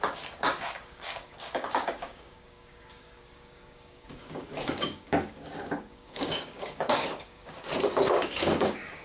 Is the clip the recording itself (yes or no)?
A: no